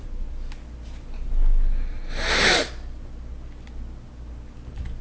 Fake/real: real